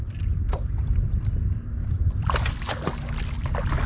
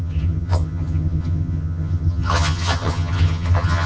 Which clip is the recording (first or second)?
first